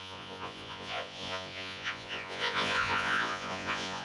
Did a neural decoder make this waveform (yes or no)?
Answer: yes